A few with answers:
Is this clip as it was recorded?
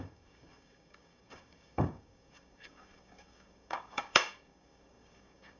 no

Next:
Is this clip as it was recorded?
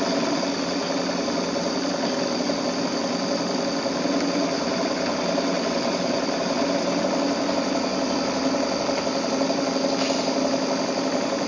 yes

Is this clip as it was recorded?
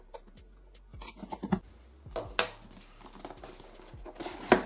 yes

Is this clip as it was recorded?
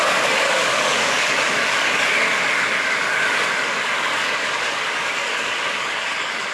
no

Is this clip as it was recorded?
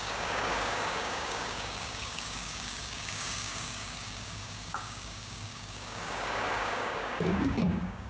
no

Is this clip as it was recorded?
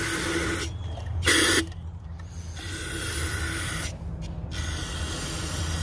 yes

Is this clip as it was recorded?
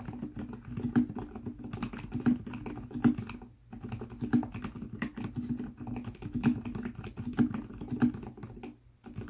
yes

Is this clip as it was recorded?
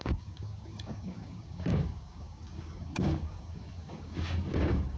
no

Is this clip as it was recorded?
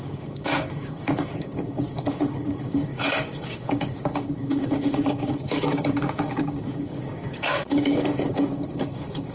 no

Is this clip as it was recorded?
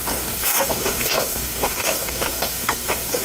no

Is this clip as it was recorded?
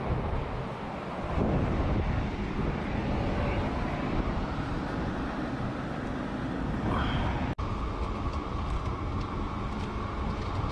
yes